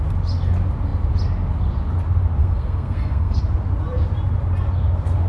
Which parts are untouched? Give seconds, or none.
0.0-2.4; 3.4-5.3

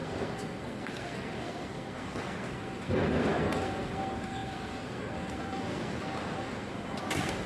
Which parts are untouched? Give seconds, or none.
none

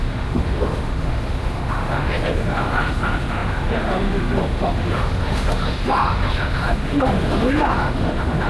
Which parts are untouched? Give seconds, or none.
none

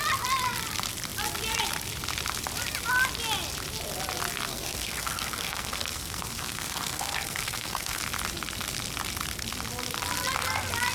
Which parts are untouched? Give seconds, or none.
0.0-4.5; 8.0-10.9

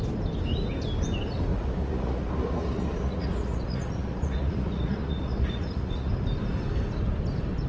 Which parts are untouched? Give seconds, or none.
0.0-1.5; 6.1-7.7

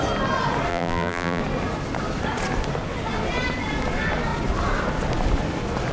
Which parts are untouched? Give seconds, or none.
0.0-0.7; 1.4-5.9